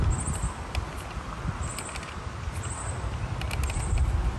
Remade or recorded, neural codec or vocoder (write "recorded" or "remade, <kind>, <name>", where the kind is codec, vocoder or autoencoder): recorded